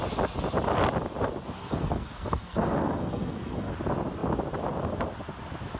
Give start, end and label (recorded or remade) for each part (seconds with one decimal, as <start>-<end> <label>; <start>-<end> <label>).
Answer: 0.0-1.6 recorded; 1.6-3.7 remade; 3.7-5.8 recorded